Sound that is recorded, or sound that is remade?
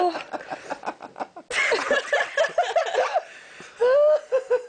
recorded